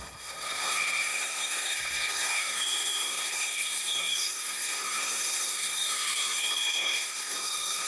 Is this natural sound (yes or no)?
no